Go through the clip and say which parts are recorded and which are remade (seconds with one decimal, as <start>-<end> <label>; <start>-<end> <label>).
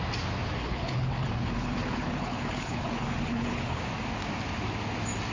0.0-0.6 recorded; 0.6-3.8 remade; 3.8-5.3 recorded